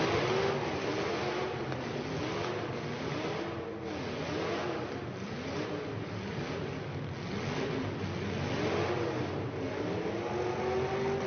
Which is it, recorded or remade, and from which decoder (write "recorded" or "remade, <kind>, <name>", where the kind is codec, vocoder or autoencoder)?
recorded